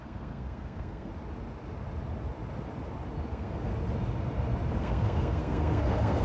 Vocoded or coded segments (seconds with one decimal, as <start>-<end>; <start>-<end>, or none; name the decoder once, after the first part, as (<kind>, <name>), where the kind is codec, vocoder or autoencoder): 0.0-1.1 (codec, SNAC); 3.3-3.7; 4.8-6.2